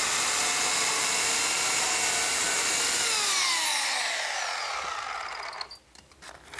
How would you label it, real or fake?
real